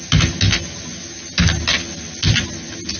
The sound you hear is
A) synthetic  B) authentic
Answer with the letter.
B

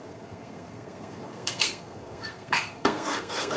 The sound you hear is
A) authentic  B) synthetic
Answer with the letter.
B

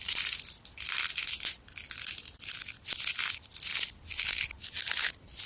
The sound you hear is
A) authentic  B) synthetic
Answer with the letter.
A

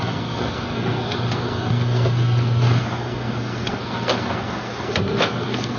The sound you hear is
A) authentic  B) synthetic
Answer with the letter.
B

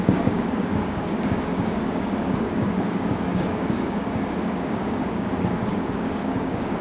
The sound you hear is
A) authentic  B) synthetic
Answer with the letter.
B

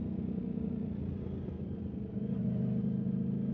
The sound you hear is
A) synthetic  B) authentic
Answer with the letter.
B